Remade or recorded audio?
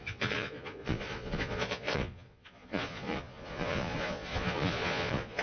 remade